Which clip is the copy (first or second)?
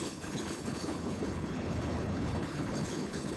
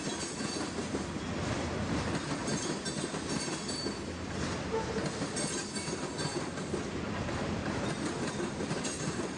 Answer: first